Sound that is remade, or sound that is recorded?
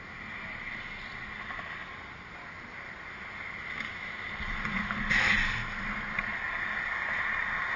recorded